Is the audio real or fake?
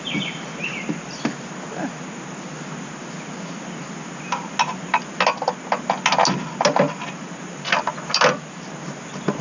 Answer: real